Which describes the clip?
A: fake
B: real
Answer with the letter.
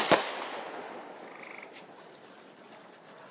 B